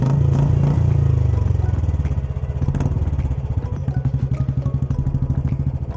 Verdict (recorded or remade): recorded